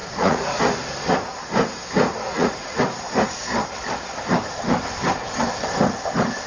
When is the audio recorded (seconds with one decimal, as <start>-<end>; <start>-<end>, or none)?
0.6-2.2; 2.8-6.5